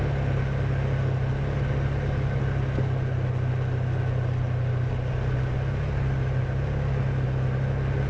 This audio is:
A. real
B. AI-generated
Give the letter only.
A